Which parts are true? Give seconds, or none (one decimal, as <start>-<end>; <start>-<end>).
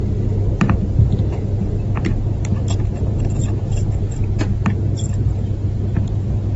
0.0-6.6